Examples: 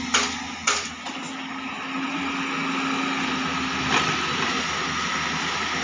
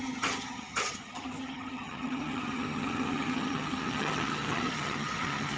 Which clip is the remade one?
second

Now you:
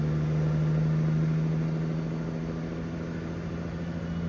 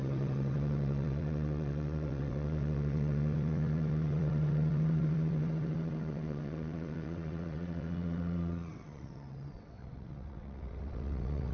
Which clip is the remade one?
second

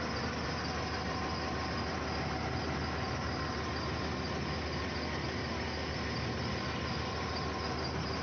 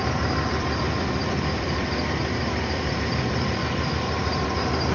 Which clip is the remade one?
second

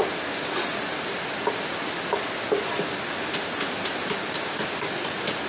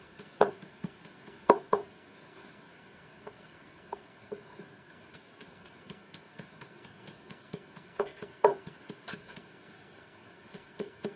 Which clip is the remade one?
second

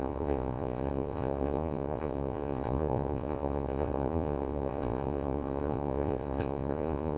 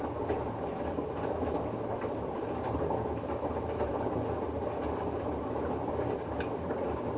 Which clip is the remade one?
first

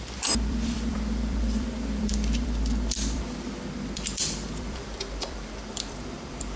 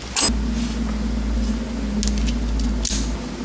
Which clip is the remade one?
first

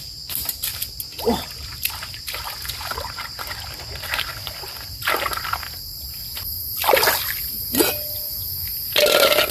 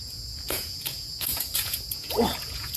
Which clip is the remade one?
second